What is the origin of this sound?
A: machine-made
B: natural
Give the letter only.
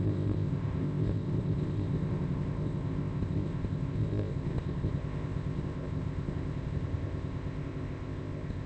A